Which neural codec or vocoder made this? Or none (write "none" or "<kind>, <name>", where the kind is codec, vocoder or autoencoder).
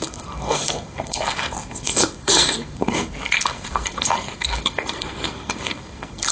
codec, SNAC